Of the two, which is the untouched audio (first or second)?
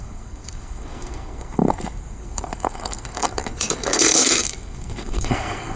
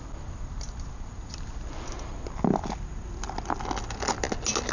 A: second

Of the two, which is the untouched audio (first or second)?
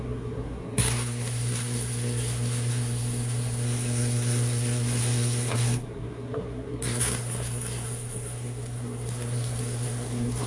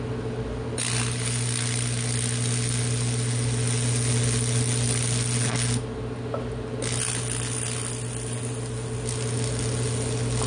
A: second